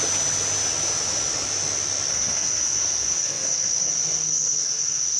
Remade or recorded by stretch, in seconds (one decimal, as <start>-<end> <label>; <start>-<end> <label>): 0.0-2.1 recorded; 2.1-5.2 remade